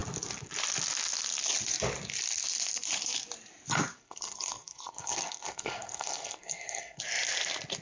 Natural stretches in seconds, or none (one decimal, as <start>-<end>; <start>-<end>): 0.0-4.0; 7.0-7.8

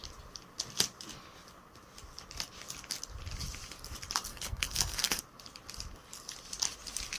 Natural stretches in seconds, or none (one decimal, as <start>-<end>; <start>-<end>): 0.0-4.3; 5.2-7.2

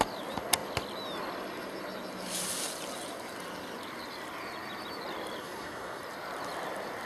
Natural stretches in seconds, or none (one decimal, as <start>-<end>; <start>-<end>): 0.0-5.4; 6.0-7.1

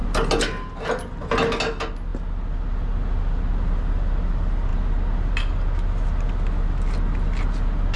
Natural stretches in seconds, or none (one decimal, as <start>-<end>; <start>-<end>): 0.0-8.0

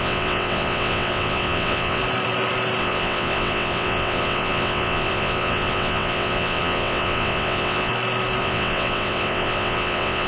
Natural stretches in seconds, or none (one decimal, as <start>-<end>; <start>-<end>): 2.0-2.8; 7.9-8.4

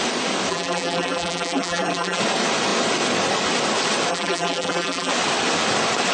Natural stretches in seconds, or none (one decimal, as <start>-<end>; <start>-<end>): 0.0-0.5; 2.2-4.1; 5.1-6.1